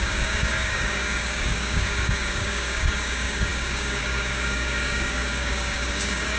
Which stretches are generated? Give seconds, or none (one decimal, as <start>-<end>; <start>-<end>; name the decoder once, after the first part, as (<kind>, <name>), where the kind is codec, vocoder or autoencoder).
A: 0.0-6.4 (codec, DAC)